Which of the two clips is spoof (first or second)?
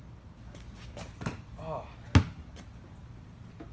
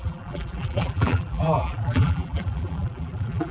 second